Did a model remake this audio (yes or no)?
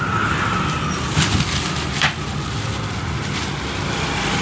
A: no